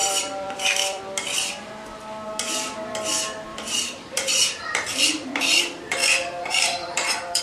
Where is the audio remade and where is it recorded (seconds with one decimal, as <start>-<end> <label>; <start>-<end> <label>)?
0.0-1.0 remade; 1.0-3.5 recorded; 3.5-7.4 remade